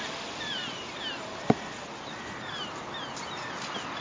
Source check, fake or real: real